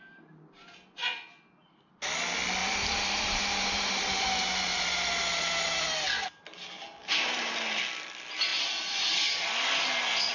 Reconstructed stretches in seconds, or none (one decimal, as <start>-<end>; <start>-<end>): 2.6-4.8; 7.0-7.5